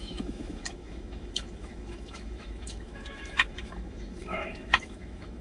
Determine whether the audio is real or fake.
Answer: fake